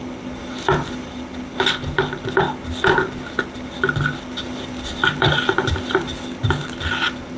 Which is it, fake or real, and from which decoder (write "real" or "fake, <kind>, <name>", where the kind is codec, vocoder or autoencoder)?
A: real